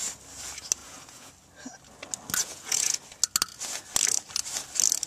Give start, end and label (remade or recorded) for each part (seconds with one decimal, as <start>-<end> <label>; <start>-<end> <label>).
0.0-0.8 recorded; 0.8-1.3 remade; 1.3-2.4 recorded; 2.4-3.0 remade; 3.0-5.1 recorded